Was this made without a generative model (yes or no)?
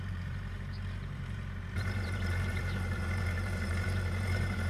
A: no